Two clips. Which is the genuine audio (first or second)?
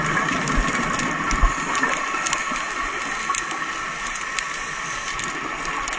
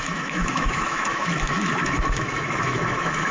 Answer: first